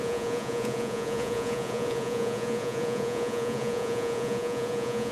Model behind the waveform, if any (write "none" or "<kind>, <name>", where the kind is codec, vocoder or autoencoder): vocoder, Vocos